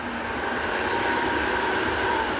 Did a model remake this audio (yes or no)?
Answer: no